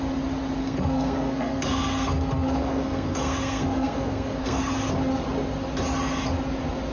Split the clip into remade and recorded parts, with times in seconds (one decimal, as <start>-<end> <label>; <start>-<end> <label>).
0.0-0.6 recorded; 0.6-4.7 remade; 4.7-6.9 recorded